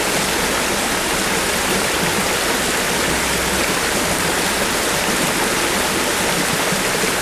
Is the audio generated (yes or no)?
no